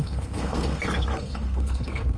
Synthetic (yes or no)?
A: yes